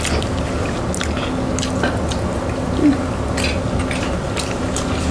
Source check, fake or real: real